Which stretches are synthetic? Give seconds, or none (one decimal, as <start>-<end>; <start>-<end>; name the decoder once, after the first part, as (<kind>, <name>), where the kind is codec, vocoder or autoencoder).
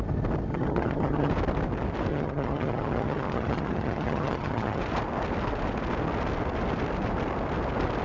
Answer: 0.5-1.3 (vocoder, HiFi-GAN); 2.1-4.8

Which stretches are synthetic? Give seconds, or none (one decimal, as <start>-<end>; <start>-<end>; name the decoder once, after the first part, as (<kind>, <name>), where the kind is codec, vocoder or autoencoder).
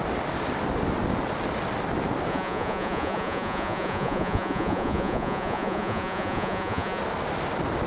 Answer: 2.3-7.0 (vocoder, Vocos)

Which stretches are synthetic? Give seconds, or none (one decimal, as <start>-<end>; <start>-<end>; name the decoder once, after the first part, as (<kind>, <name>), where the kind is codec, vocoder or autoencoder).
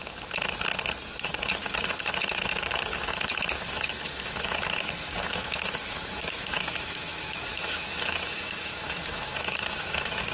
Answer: 1.5-10.3 (autoencoder, DAC-VAE)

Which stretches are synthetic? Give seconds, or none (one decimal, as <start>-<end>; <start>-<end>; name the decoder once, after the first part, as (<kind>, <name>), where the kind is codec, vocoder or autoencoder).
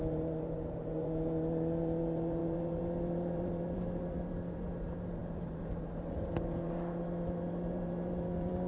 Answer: 0.0-8.7 (vocoder, BigVGAN v2)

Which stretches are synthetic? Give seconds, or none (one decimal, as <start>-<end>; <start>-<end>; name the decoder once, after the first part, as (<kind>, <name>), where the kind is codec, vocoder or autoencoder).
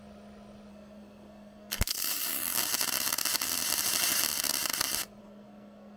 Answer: 0.7-2.0 (codec, SNAC); 5.2-6.0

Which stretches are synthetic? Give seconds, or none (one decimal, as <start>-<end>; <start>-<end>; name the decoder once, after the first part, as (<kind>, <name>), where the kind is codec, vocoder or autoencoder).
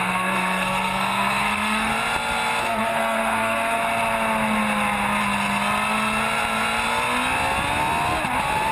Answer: 0.0-1.9 (codec, SNAC); 2.6-3.8